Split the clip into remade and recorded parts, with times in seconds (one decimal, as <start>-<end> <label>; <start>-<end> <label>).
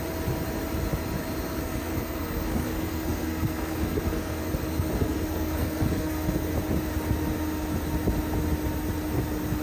0.0-1.5 recorded; 1.5-6.5 remade; 6.5-9.6 recorded